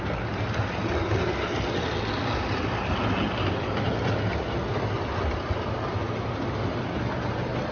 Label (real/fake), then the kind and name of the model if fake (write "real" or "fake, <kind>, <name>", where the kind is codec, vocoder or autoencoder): real